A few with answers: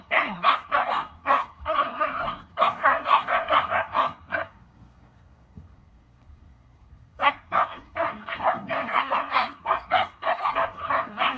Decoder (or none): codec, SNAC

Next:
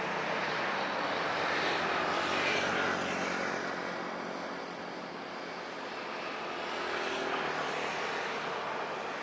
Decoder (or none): none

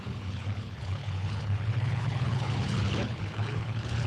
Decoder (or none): codec, HILCodec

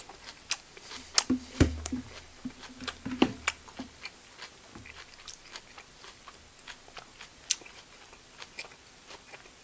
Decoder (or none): none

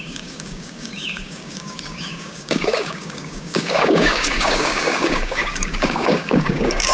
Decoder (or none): codec, DAC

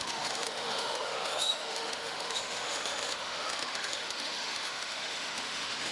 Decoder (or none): autoencoder, DAC-VAE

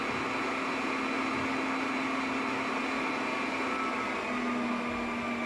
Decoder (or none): none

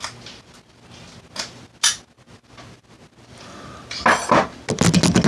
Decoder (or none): none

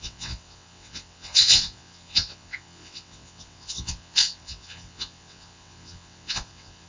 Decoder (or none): vocoder, WaveNeXt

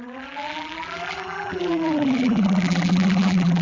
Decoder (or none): vocoder, BigVGAN v2